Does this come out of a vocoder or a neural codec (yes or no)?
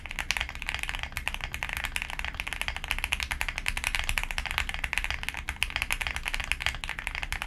no